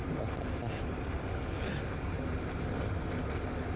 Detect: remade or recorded recorded